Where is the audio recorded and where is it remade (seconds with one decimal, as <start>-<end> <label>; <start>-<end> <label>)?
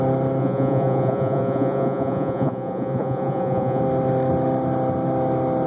0.0-0.4 recorded; 0.4-3.8 remade; 3.8-5.7 recorded